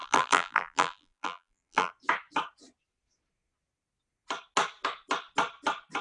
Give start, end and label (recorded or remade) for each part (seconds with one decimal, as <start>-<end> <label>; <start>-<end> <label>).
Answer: 0.0-1.9 remade; 1.9-6.0 recorded